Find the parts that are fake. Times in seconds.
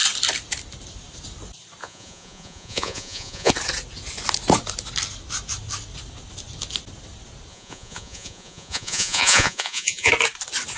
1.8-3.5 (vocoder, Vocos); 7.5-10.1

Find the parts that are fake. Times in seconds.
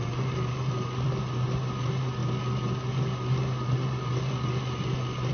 none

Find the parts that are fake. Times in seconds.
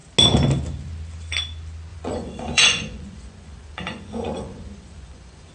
1.9-5.5 (vocoder, Vocos)